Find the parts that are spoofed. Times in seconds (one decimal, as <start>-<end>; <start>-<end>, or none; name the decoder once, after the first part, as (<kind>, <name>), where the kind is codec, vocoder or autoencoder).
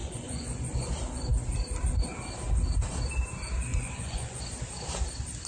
0.0-0.9 (vocoder, Vocos); 3.7-4.4